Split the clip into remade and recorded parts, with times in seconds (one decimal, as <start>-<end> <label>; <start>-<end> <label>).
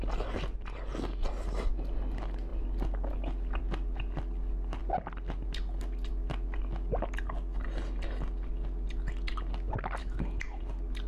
0.0-10.0 recorded; 10.0-10.6 remade; 10.6-11.1 recorded